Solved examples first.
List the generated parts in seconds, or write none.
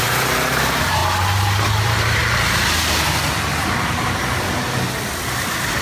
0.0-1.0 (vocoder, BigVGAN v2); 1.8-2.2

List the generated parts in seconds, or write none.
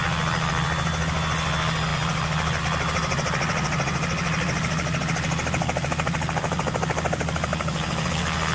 1.9-2.6 (vocoder, BigVGAN v2)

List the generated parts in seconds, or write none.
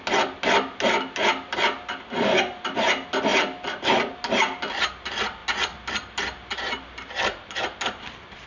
none